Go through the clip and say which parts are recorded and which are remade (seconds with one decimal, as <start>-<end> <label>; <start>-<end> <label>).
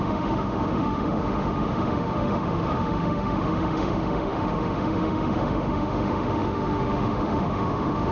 0.0-8.1 remade